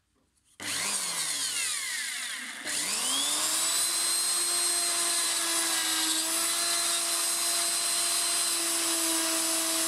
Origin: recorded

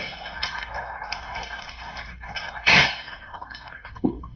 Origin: remade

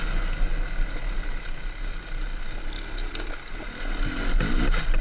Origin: recorded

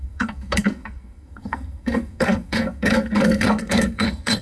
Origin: remade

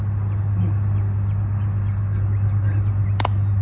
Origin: recorded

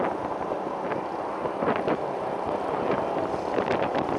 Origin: recorded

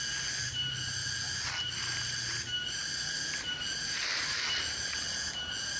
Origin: recorded